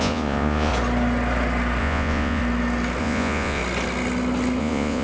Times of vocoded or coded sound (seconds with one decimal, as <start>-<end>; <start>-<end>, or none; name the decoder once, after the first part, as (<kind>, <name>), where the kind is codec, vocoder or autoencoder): 0.0-0.7 (vocoder, Vocos); 1.8-2.4; 3.0-3.6; 4.6-5.0